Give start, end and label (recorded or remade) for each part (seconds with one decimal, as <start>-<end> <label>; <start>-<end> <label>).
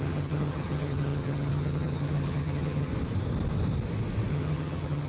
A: 0.0-2.9 remade; 2.9-4.3 recorded; 4.3-5.1 remade